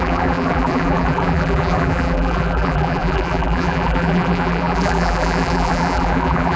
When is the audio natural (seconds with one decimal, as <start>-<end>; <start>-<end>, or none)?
none

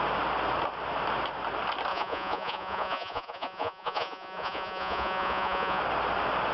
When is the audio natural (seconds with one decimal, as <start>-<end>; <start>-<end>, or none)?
0.0-1.9; 5.8-6.5

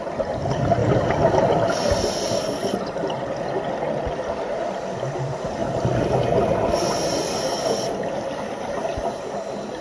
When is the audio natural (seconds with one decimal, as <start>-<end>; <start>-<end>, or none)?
0.0-9.8

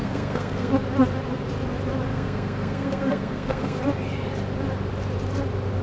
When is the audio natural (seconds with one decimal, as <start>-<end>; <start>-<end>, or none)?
0.7-2.1; 3.8-5.8

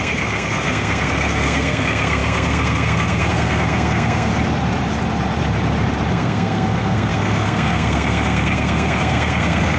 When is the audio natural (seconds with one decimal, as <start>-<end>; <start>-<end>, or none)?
4.3-6.1